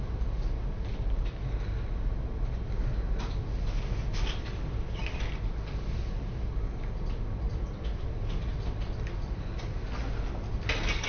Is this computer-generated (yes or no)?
no